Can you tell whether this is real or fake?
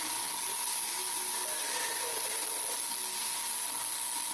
real